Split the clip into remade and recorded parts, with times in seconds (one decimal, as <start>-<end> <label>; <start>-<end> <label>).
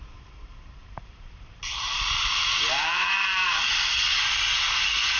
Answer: 0.0-0.8 recorded; 0.8-3.9 remade; 3.9-5.2 recorded